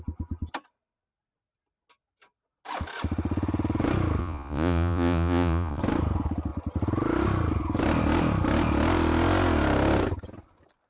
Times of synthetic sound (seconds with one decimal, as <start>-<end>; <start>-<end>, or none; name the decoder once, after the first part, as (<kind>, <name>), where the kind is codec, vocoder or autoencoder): 4.2-5.8 (vocoder, Vocos)